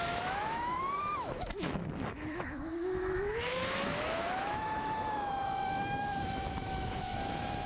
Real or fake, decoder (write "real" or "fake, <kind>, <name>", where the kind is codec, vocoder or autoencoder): fake, autoencoder, DAC-VAE